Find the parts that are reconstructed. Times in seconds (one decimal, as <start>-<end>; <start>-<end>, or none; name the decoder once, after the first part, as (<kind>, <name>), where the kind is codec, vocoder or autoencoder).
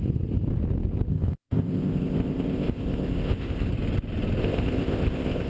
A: 1.1-3.7 (codec, ZipCodec); 4.4-5.5